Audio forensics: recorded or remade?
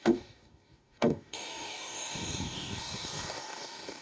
remade